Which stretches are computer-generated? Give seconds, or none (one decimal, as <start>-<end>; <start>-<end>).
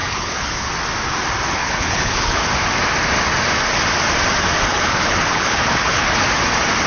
0.0-0.7; 1.6-2.4; 4.7-6.2